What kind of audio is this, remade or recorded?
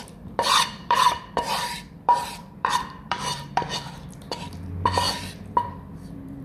remade